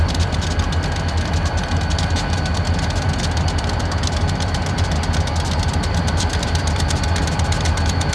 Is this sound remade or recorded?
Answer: recorded